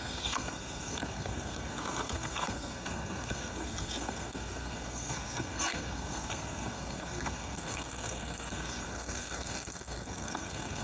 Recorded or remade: remade